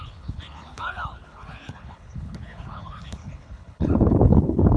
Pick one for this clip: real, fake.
fake